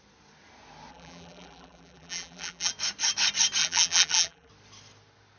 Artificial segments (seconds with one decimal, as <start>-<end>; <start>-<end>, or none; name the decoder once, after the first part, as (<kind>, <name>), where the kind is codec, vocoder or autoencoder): 0.9-2.7 (vocoder, BigVGAN v2); 3.6-4.5